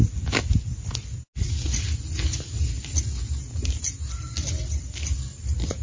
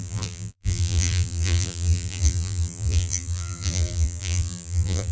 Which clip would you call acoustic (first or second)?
first